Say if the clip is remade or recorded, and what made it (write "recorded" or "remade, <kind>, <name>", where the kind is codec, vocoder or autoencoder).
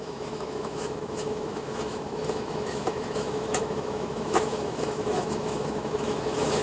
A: remade, autoencoder, DAC-VAE